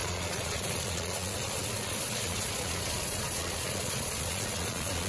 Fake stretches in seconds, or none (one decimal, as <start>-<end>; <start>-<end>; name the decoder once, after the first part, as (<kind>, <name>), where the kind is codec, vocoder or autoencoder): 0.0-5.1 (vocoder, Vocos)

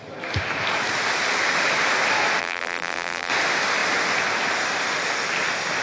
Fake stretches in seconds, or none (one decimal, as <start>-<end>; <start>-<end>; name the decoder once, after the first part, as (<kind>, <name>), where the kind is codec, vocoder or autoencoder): 2.4-3.3 (vocoder, BigVGAN v2)

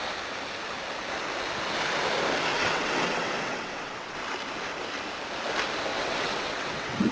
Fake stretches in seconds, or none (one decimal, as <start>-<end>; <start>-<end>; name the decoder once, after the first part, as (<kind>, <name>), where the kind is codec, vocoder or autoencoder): 2.5-4.2 (vocoder, WaveNeXt); 5.9-7.1